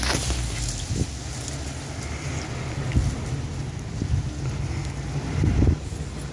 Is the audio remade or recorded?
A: recorded